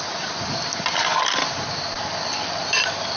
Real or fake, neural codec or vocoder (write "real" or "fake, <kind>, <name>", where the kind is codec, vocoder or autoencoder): real